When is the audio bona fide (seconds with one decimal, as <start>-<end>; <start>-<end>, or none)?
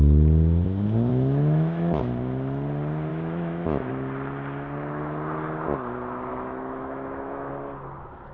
0.0-1.1; 2.0-3.1; 3.9-6.3; 7.5-8.3